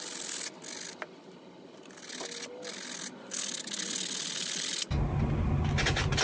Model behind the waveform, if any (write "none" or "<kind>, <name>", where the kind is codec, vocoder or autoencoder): none